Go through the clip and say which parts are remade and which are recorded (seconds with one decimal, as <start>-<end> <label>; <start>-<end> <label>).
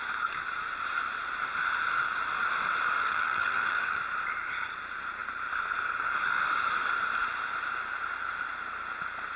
0.0-3.0 recorded; 3.0-4.0 remade; 4.0-9.4 recorded